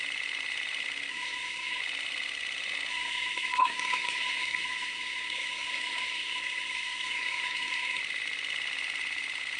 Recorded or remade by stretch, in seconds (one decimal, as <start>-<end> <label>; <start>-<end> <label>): 0.0-1.1 recorded; 1.1-1.8 remade; 1.8-2.9 recorded; 2.9-8.0 remade; 8.0-9.6 recorded